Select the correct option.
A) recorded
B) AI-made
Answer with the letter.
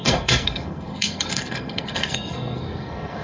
B